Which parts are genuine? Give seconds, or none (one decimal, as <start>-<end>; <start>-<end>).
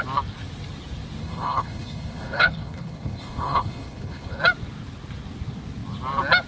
0.0-1.2; 4.4-6.5